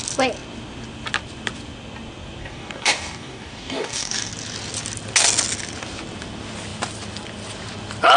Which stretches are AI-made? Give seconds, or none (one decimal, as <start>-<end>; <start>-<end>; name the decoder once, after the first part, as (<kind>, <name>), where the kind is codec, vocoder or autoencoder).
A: 2.4-4.3 (codec, DAC)